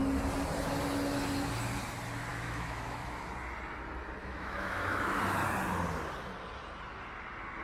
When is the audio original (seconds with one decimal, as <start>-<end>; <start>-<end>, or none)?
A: 0.0-2.3; 3.3-4.2; 5.2-7.6